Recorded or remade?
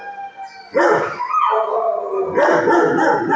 recorded